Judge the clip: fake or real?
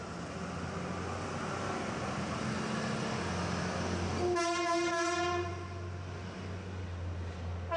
real